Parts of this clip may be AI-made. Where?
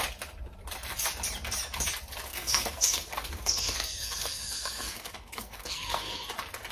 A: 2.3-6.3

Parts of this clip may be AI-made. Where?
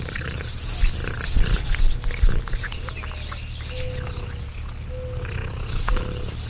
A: 5.4-5.9